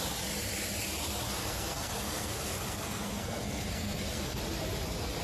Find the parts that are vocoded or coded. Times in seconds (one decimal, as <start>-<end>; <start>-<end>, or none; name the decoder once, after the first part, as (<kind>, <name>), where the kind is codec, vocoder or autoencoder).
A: 1.4-4.4 (codec, SNAC)